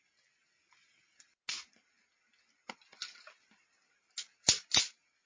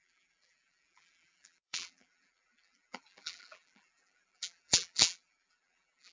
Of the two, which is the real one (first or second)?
first